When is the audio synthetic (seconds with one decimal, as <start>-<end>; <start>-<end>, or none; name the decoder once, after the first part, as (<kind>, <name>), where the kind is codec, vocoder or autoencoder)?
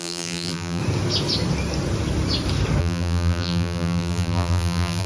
0.0-0.8 (vocoder, BigVGAN v2); 2.8-5.1